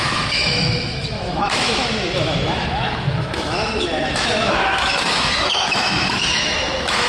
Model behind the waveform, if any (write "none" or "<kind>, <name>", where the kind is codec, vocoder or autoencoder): autoencoder, DAC-VAE